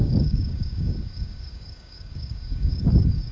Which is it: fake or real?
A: fake